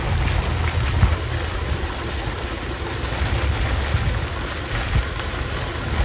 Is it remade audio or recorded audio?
recorded